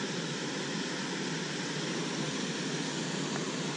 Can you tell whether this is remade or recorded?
recorded